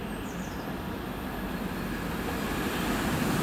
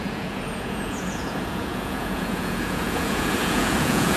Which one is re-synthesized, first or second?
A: second